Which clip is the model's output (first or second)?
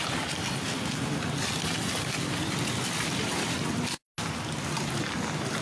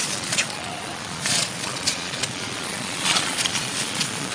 second